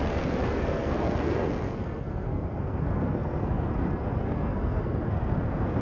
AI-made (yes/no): yes